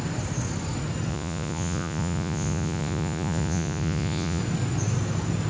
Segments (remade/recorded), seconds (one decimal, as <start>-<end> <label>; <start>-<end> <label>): 0.0-1.1 recorded; 1.1-4.4 remade; 4.4-5.5 recorded

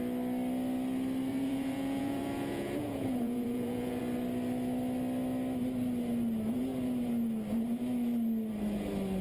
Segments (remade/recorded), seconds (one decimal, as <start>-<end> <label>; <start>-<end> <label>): 0.0-1.3 recorded; 1.3-4.0 remade; 4.0-9.2 recorded

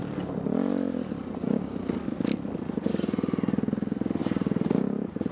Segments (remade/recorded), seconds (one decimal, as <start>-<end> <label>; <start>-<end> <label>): 0.0-4.2 recorded; 4.2-5.3 remade

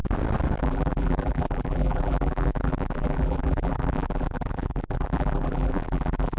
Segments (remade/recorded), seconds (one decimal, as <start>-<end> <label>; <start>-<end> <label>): 0.0-0.6 recorded; 0.6-6.4 remade

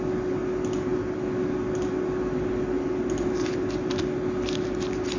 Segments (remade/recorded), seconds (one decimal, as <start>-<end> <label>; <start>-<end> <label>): 0.0-5.2 recorded

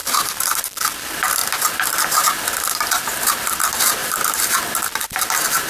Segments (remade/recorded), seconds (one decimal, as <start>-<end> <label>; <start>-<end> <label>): 0.0-0.6 recorded; 0.6-5.7 remade

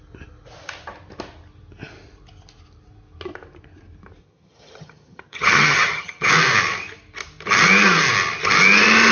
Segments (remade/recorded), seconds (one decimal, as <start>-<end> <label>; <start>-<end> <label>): 0.0-4.2 recorded; 4.2-6.3 remade; 6.3-9.1 recorded